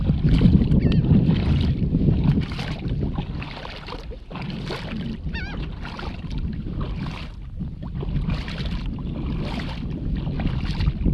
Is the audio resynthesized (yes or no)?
no